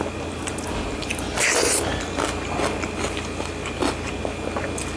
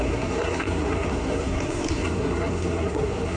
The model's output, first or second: second